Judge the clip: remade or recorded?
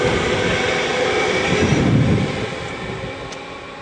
recorded